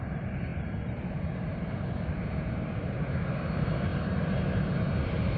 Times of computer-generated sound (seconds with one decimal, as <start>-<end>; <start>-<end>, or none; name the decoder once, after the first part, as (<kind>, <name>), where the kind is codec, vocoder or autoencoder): none